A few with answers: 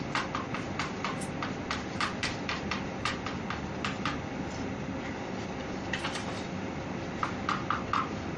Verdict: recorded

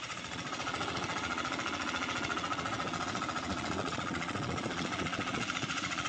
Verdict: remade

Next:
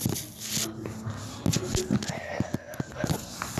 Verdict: recorded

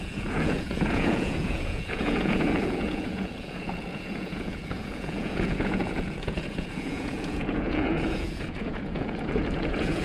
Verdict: remade